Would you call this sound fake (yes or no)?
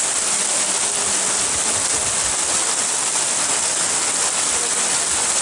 no